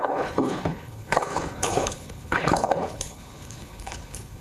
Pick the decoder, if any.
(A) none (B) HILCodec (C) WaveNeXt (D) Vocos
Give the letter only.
B